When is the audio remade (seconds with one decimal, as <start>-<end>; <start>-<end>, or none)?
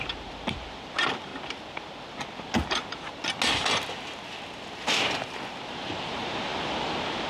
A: 0.0-1.3; 5.7-6.5